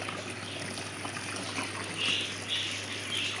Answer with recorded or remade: recorded